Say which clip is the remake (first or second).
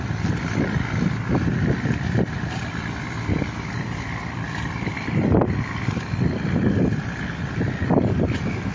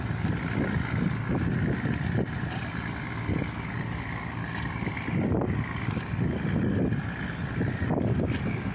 first